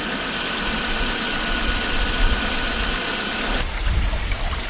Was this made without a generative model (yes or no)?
yes